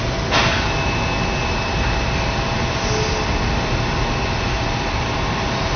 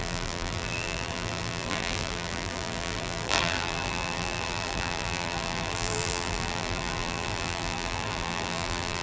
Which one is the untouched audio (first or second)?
first